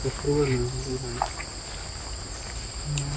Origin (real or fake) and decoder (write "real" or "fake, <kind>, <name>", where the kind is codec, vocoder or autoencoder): real